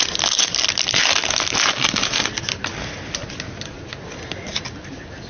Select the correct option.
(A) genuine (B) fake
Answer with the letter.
A